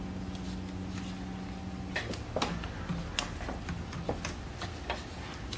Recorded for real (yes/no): yes